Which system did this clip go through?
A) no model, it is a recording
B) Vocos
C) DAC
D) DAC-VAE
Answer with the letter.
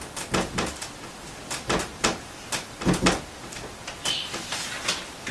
A